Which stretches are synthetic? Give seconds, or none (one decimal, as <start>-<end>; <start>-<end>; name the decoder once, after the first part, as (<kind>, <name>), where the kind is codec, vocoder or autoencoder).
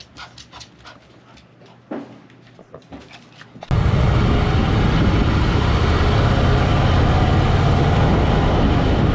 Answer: none